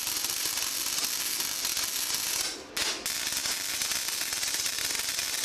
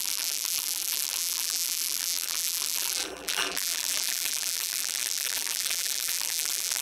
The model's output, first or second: second